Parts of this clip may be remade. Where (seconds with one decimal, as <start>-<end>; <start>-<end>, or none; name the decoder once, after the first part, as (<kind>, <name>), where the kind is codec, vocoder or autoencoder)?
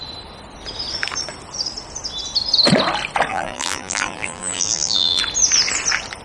3.3-5.2 (vocoder, BigVGAN v2)